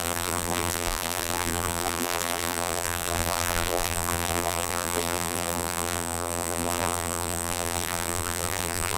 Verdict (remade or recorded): remade